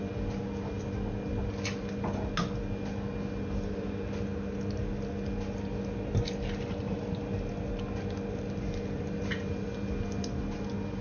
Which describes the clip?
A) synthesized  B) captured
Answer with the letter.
B